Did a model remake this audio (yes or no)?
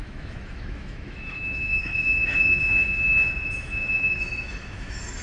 yes